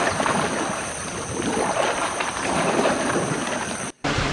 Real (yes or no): yes